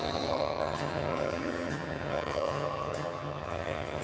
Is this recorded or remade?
remade